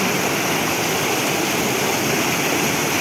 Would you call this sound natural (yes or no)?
yes